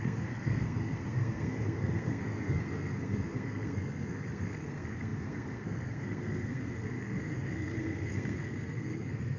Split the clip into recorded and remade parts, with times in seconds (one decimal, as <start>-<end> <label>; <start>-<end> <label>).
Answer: 0.0-9.4 remade